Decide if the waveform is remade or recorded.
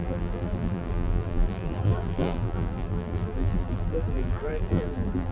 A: remade